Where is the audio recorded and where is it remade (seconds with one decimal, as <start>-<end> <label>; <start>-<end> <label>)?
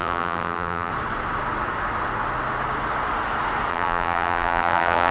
0.0-0.9 remade; 0.9-3.7 recorded; 3.7-5.1 remade